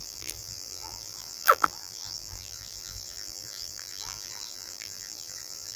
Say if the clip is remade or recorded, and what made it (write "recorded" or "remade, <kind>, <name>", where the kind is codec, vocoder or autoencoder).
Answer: remade, vocoder, BigVGAN v2